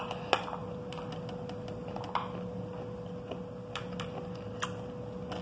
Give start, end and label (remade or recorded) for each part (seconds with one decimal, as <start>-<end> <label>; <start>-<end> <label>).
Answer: 0.0-5.4 recorded